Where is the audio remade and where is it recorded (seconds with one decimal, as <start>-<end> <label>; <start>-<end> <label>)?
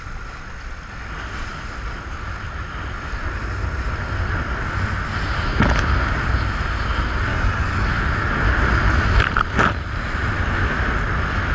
0.0-7.3 recorded; 7.3-7.9 remade; 7.9-11.5 recorded